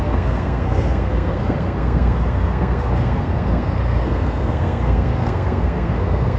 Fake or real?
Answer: fake